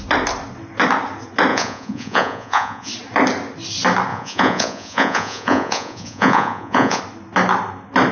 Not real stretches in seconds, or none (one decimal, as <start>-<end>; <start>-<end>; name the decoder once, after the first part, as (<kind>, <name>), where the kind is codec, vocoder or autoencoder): 1.5-2.9 (vocoder, Vocos); 4.1-7.0